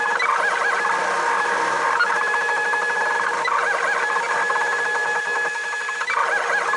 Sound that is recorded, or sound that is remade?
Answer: recorded